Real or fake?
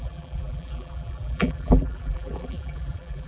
fake